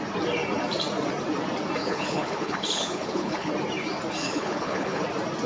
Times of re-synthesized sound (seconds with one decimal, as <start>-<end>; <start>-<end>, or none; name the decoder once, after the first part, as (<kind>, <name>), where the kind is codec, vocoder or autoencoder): 1.8-3.5 (codec, HILCodec); 4.2-5.0